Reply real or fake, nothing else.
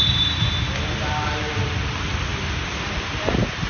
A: real